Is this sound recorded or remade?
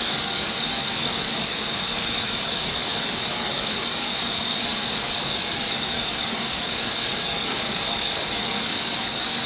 remade